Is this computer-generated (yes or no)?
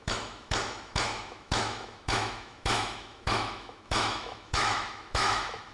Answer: yes